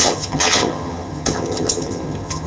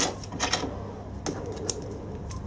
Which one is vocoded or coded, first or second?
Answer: first